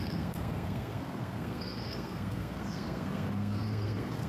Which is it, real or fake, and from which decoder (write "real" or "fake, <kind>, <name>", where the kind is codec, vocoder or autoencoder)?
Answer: fake, codec, SNAC